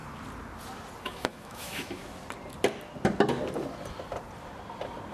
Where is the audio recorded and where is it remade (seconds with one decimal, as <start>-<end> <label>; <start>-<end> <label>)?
0.0-1.0 recorded; 1.0-2.0 remade; 2.0-5.1 recorded